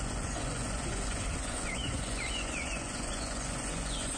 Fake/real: fake